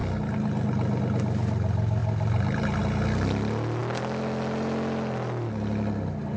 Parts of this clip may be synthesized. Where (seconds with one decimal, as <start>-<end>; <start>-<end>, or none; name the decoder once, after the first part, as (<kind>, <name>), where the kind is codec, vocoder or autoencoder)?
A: none